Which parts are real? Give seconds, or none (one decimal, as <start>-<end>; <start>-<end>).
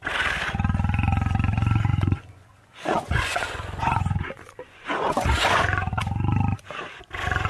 0.0-1.9; 5.9-7.5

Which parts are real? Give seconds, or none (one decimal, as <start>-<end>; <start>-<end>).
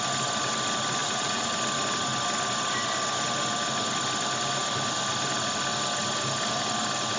0.0-1.0; 1.5-7.2